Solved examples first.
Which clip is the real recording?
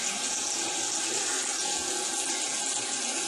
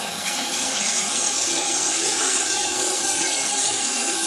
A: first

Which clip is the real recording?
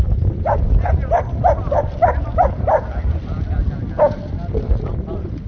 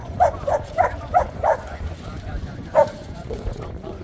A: first